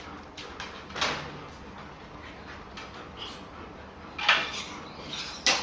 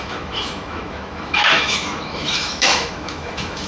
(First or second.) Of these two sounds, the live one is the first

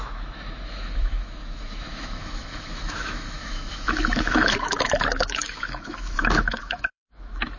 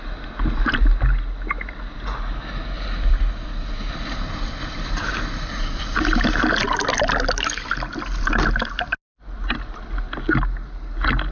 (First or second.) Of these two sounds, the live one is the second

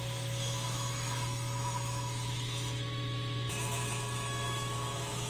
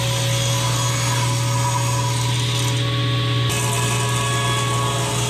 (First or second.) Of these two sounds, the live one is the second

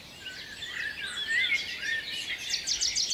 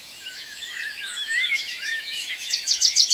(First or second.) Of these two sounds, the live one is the first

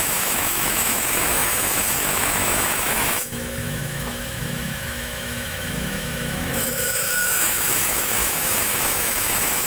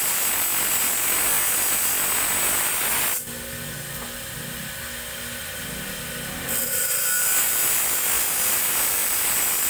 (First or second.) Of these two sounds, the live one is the second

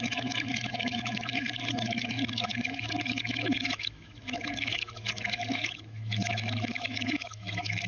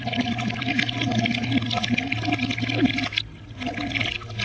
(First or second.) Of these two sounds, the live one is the second